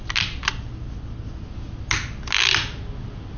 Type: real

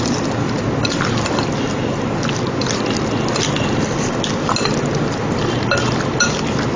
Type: real